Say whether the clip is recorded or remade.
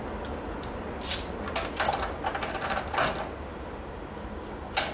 recorded